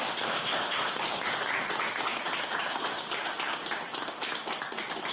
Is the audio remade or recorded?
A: recorded